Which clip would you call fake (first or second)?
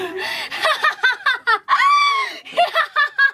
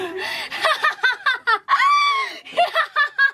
first